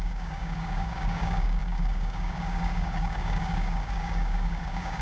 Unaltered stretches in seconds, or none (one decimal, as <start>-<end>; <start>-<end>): none